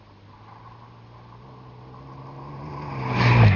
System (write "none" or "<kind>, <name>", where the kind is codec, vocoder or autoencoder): none